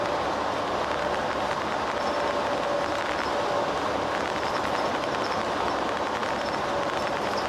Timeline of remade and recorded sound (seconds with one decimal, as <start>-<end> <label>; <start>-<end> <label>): 0.0-7.5 recorded